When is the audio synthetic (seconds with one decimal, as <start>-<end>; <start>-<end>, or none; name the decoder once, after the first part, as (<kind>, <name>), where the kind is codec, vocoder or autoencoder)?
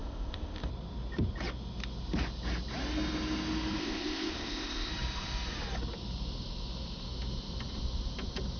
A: 0.0-0.7 (codec, ZipCodec); 3.8-4.9